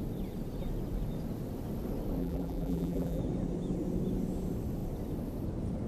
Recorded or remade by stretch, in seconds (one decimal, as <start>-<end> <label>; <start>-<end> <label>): 0.0-2.2 recorded; 2.2-3.2 remade; 3.2-5.9 recorded